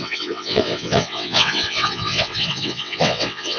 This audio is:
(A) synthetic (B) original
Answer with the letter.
A